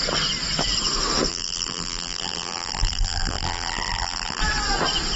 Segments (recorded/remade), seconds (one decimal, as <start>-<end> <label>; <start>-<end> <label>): 0.0-1.3 recorded; 1.3-4.4 remade; 4.4-5.2 recorded